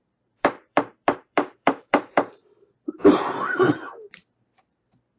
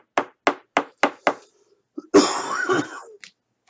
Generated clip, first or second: first